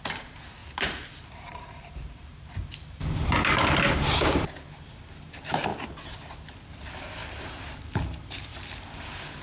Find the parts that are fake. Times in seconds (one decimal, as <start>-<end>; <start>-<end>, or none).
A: 0.0-5.7; 6.7-9.4